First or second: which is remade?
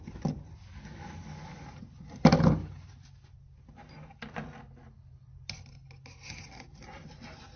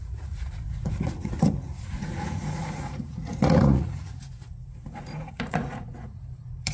second